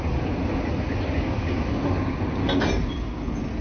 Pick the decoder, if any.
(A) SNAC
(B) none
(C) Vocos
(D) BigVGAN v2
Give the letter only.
B